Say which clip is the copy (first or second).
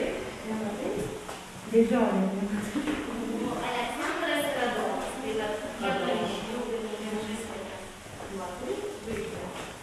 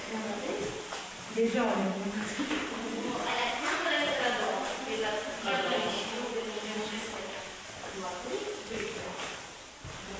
second